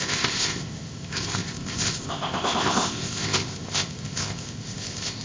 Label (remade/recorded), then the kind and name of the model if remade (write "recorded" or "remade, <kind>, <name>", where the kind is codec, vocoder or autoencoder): remade, codec, ZipCodec